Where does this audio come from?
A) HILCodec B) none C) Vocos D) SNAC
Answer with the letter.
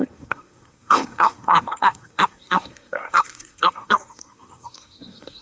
D